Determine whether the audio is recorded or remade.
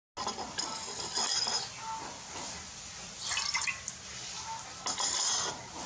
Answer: recorded